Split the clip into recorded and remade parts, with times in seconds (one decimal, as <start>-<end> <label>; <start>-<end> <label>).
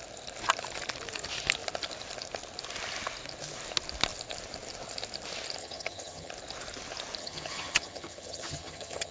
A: 0.0-5.6 recorded; 5.6-6.3 remade; 6.3-7.2 recorded; 7.2-9.1 remade